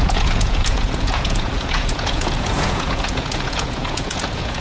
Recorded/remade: remade